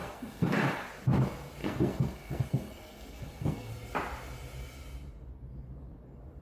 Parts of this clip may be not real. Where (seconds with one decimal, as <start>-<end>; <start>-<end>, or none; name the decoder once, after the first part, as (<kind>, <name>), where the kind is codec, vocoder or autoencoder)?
0.0-0.9 (codec, SNAC); 1.6-3.7